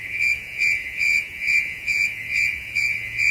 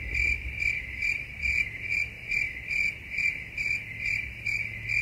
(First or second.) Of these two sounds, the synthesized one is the first